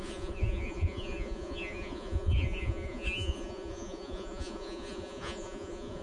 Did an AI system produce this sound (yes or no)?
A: yes